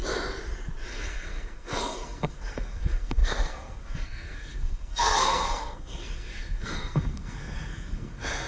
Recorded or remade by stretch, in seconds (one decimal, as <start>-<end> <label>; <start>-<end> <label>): 0.0-0.9 recorded; 0.9-8.5 remade